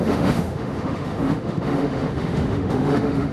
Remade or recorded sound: remade